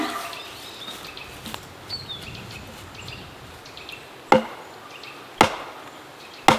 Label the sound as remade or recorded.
recorded